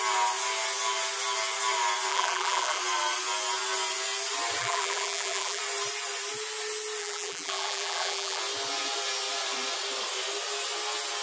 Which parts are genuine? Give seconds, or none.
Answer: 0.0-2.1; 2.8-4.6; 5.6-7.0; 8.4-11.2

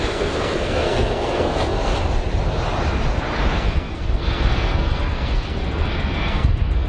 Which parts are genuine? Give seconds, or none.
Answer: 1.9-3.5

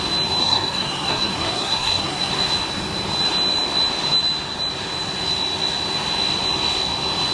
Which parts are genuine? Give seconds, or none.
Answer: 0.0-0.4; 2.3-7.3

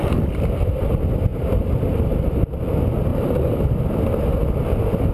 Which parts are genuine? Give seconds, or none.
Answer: 0.0-3.1; 3.8-5.1